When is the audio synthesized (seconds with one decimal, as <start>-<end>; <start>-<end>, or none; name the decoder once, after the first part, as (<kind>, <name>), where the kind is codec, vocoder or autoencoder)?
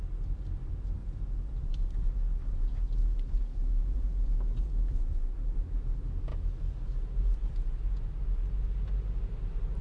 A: 1.0-1.6 (vocoder, Vocos); 3.6-5.0